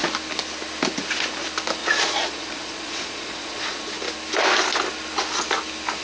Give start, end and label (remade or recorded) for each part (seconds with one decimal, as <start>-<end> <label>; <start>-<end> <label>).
0.0-1.8 recorded; 1.8-4.0 remade; 4.0-6.0 recorded

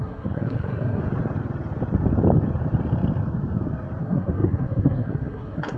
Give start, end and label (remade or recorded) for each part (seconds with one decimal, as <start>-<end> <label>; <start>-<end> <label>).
0.0-1.0 remade; 1.0-4.0 recorded; 4.0-5.8 remade

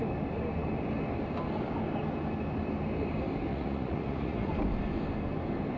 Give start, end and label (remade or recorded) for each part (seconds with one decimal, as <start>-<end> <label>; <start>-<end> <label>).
0.0-3.5 recorded; 3.5-4.5 remade; 4.5-5.8 recorded

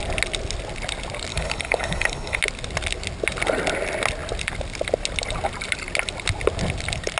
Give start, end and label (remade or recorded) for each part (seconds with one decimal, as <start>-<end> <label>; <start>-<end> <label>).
0.0-1.3 recorded; 1.3-2.4 remade; 2.4-7.2 recorded

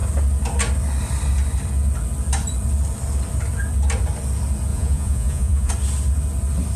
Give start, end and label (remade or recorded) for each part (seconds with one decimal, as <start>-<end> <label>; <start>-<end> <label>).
0.0-4.7 recorded; 4.7-5.7 remade; 5.7-6.8 recorded

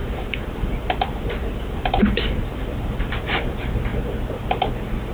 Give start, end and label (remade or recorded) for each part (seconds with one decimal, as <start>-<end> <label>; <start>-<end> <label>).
0.0-3.1 remade; 3.1-5.1 recorded

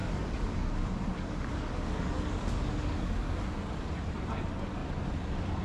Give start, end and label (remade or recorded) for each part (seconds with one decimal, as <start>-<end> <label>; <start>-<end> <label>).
0.0-3.4 remade; 3.4-5.6 recorded